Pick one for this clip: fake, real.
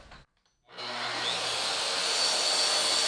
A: real